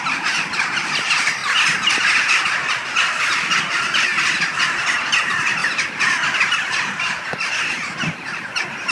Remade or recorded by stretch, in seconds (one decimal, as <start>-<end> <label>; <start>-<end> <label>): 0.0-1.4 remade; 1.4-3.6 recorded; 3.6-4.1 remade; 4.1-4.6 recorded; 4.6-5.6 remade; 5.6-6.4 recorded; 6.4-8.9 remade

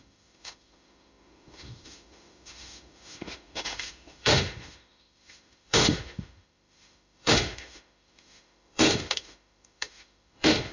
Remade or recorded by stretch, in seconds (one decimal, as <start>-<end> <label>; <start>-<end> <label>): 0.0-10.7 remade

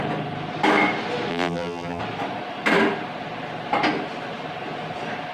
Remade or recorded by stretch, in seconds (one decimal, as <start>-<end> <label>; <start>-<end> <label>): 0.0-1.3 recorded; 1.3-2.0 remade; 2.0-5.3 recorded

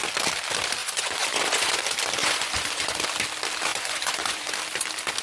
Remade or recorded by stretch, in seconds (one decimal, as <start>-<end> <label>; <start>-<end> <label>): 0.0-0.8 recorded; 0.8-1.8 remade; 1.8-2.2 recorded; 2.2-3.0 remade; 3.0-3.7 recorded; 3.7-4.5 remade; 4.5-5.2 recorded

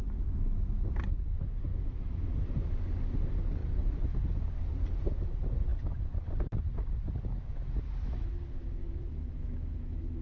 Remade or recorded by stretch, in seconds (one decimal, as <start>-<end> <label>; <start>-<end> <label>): 0.0-1.7 recorded; 1.7-2.3 remade; 2.3-8.8 recorded; 8.8-10.2 remade

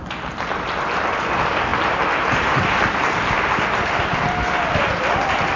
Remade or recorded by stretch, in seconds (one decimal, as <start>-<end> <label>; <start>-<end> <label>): 0.0-5.6 recorded